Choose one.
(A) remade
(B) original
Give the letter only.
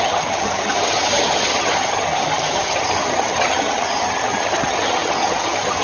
A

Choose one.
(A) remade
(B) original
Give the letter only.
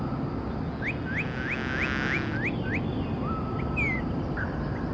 B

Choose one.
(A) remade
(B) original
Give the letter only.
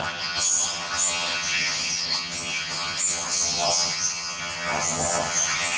A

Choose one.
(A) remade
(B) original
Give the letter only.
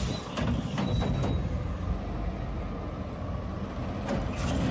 B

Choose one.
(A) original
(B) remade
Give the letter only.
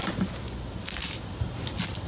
A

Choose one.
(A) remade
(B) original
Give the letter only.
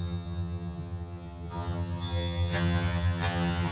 A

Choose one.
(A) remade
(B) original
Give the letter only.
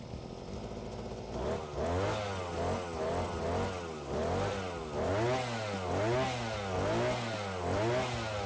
B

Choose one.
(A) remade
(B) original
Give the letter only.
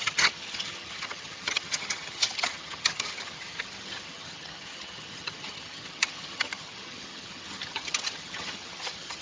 A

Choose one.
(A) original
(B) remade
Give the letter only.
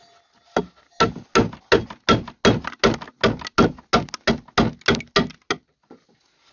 A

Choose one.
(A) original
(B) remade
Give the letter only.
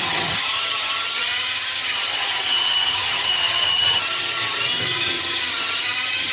B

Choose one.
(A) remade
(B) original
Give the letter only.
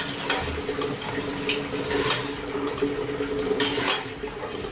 B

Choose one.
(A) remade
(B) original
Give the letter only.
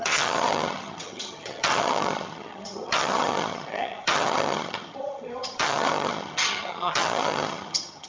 A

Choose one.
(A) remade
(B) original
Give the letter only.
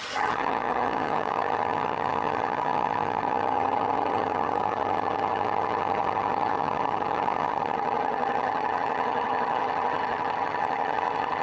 A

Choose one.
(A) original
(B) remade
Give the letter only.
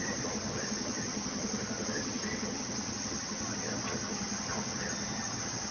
B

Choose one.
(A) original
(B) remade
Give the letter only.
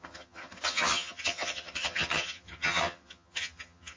B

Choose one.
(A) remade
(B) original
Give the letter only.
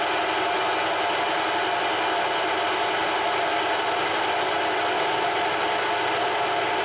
B